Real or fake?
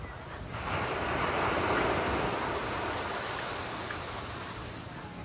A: real